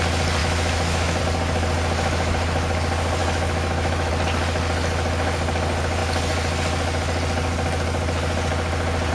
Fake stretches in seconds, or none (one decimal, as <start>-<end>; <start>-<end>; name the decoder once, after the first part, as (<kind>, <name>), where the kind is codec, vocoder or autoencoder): 0.4-1.2 (autoencoder, DAC-VAE); 3.2-4.1